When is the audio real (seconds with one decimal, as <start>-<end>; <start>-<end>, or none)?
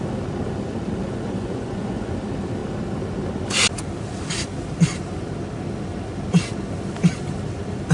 0.0-1.0; 2.1-7.9